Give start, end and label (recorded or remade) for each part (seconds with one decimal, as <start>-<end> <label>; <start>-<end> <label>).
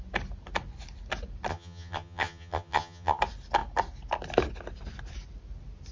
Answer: 0.0-1.5 recorded; 1.5-3.2 remade; 3.2-5.9 recorded